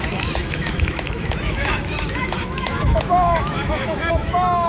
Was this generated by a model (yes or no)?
yes